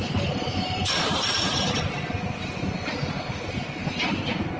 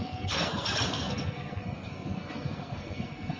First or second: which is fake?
second